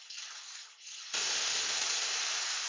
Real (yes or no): no